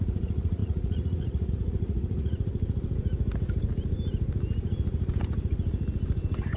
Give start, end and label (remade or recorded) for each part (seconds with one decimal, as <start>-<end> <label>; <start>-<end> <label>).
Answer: 0.0-2.5 remade; 2.5-6.6 recorded